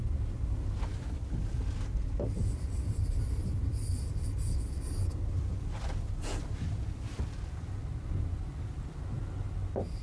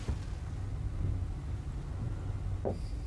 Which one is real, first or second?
second